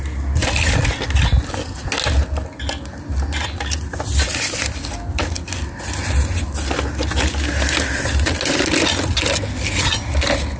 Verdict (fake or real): real